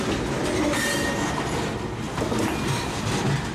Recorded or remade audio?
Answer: recorded